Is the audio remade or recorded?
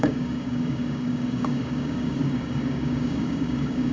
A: remade